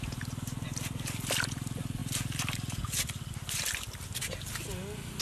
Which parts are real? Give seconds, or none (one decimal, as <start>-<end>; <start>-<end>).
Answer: 0.0-2.0; 3.3-5.2